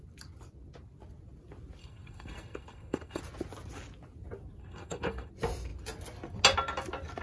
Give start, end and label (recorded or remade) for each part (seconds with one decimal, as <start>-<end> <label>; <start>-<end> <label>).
0.0-1.8 recorded; 1.8-3.2 remade; 3.2-4.6 recorded; 4.6-5.3 remade; 5.3-7.2 recorded